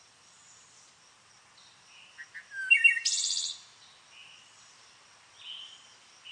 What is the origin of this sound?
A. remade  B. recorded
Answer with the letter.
B